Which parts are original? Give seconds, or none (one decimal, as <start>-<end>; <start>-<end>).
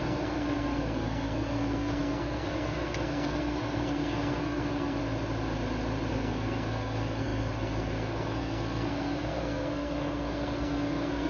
5.0-6.1